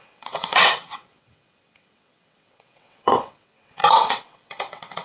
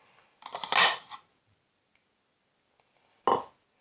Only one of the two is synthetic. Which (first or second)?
first